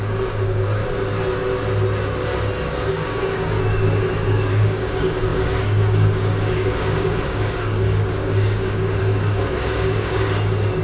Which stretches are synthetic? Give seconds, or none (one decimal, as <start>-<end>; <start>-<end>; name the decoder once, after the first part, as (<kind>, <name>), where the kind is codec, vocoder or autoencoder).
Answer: 0.0-0.8 (codec, DAC); 2.9-10.8